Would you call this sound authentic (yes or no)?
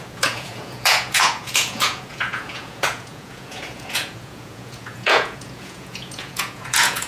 no